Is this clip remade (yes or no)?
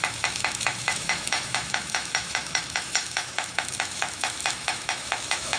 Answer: yes